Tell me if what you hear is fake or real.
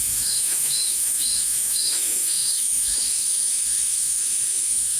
fake